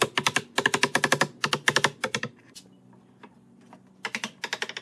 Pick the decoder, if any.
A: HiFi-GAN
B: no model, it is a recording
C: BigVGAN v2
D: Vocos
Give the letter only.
B